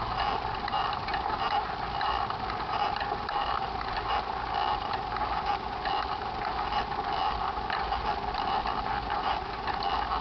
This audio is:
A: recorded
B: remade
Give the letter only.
A